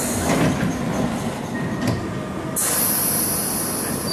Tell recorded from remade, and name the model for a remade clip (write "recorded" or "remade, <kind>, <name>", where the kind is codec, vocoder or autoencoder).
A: recorded